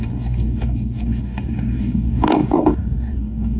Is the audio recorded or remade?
remade